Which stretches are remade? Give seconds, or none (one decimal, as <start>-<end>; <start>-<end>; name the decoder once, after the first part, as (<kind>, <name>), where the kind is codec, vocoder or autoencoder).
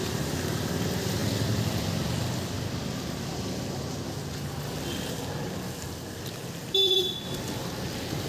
none